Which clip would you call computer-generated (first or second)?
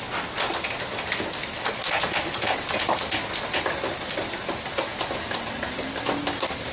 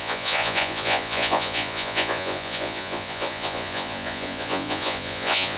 second